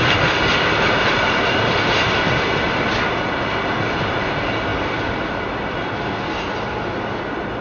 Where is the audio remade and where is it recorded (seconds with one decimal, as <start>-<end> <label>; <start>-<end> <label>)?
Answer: 0.0-7.6 recorded